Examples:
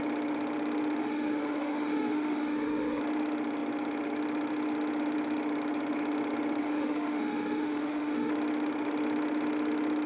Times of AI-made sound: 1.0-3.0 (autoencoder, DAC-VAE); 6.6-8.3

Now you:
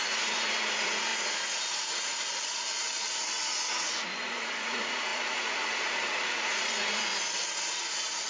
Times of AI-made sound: 0.0-2.1 (vocoder, Vocos); 2.8-7.1; 7.9-8.3

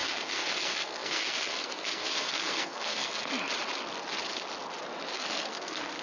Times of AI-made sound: 0.0-3.3 (codec, SNAC); 5.1-6.0

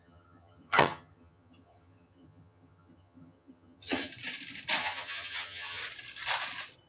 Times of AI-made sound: 0.0-4.1 (vocoder, HiFi-GAN); 4.8-5.8

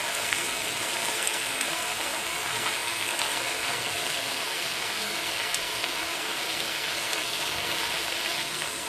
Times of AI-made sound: 0.0-8.9 (codec, SNAC)